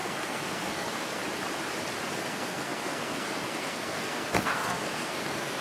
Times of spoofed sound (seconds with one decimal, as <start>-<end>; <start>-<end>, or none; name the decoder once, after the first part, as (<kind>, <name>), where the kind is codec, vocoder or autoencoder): 0.0-1.2 (codec, SNAC); 2.1-5.6